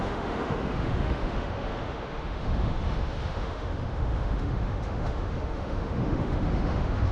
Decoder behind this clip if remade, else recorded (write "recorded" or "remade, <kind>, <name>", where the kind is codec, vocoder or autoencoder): remade, autoencoder, DAC-VAE